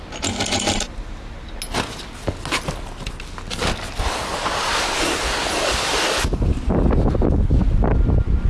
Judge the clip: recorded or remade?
recorded